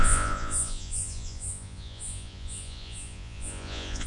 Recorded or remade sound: remade